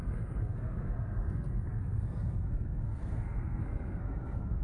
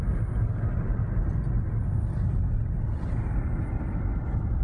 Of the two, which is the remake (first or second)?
first